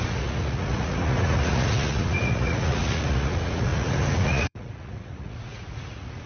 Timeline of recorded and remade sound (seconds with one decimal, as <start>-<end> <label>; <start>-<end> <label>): 0.0-6.3 remade